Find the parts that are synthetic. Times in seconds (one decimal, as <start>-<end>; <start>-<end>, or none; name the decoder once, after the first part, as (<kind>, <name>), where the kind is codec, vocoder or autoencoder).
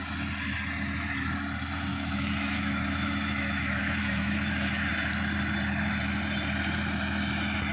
1.9-4.9 (autoencoder, DAC-VAE)